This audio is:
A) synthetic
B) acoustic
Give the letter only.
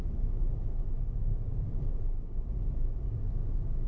B